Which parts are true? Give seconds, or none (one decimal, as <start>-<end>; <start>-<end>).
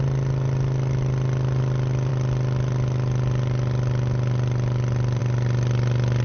0.0-6.2